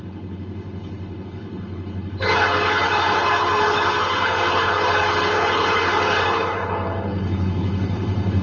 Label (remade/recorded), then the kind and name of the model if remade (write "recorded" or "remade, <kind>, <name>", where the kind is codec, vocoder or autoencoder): remade, codec, HILCodec